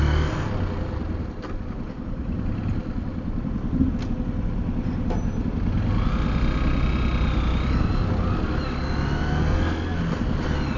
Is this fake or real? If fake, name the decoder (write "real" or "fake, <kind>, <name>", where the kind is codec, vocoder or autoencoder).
real